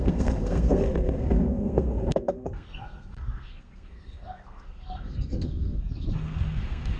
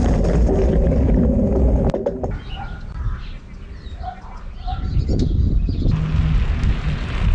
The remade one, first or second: first